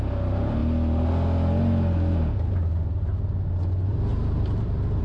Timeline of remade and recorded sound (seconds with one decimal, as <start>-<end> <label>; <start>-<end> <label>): 0.0-4.1 recorded; 4.1-5.0 remade